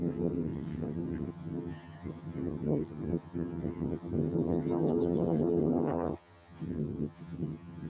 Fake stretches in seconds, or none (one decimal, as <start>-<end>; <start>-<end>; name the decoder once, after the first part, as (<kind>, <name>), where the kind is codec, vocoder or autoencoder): 0.0-7.9 (vocoder, HiFi-GAN)

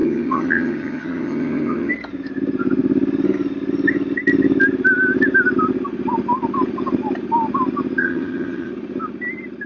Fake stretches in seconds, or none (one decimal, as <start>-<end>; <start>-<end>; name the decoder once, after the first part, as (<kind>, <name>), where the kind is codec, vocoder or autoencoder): 0.0-1.9 (vocoder, HiFi-GAN); 8.0-8.7

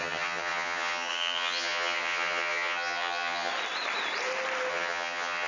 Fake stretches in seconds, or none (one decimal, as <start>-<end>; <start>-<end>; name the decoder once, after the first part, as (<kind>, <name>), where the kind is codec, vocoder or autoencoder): 0.0-3.5 (vocoder, HiFi-GAN); 4.7-5.5

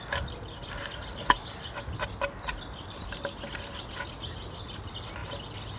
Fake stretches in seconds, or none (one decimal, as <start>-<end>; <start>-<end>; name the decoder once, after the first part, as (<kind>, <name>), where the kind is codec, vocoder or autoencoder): none

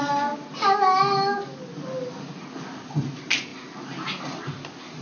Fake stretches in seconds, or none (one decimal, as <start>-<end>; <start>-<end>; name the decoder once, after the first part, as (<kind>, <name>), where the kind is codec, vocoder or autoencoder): none